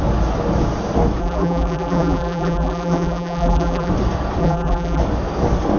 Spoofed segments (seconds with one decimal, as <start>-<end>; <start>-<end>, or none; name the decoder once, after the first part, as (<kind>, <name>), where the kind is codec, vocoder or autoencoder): 1.2-3.9 (vocoder, BigVGAN v2); 4.4-5.0